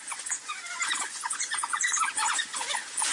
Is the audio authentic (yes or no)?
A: no